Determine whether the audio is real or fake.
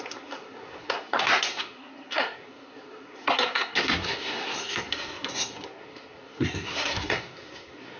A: fake